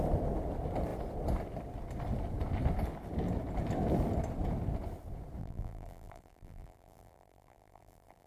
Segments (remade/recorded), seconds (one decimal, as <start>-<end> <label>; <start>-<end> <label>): 0.0-5.4 recorded; 5.4-8.3 remade